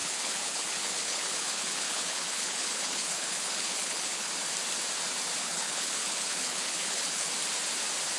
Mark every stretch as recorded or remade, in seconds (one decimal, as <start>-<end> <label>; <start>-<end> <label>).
0.0-4.3 remade; 4.3-5.4 recorded; 5.4-7.3 remade; 7.3-8.2 recorded

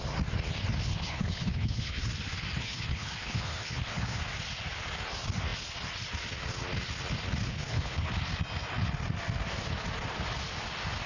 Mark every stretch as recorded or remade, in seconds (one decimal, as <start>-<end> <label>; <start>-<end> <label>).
0.0-0.9 recorded; 0.9-2.0 remade; 2.0-2.5 recorded; 2.5-4.2 remade; 4.2-7.5 recorded; 7.5-8.1 remade; 8.1-11.1 recorded